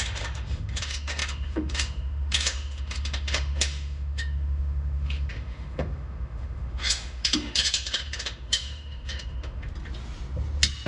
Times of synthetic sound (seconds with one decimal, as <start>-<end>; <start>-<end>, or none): 0.0-9.7